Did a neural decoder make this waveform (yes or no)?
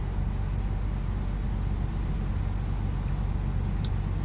no